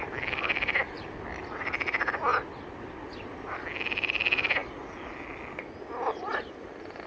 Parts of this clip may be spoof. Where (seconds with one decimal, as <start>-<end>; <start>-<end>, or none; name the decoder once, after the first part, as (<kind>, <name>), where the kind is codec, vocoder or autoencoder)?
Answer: none